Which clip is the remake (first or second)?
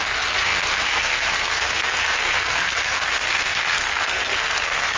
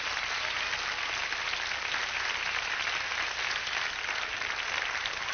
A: first